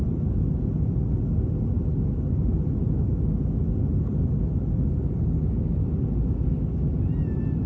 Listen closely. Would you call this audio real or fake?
real